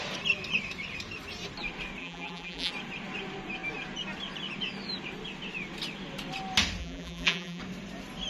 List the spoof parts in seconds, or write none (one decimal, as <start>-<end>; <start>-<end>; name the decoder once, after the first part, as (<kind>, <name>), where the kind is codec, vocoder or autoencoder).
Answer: 2.0-2.7 (vocoder, BigVGAN v2); 6.8-7.6